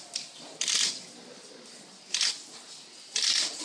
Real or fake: real